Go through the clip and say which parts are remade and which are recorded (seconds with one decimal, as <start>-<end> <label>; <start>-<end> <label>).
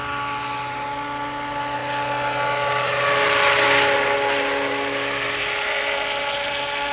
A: 0.0-6.9 recorded